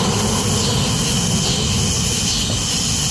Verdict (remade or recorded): recorded